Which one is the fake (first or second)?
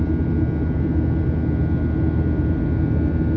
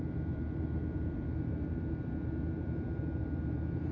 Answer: second